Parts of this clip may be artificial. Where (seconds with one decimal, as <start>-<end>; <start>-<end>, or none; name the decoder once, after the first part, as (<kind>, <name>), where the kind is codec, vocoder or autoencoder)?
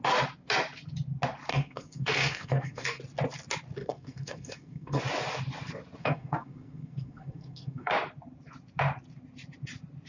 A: 1.5-3.0 (codec, SNAC); 3.8-5.0; 6.0-7.9